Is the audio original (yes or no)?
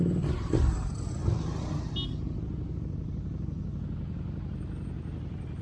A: yes